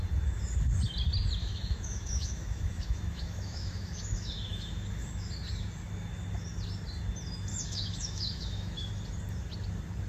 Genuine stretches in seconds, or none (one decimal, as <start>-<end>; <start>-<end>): 0.0-1.4; 5.3-7.5; 8.9-10.1